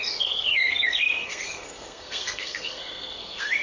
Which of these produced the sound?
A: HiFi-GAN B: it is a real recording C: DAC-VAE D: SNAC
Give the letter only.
D